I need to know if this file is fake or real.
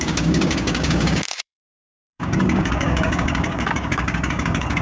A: fake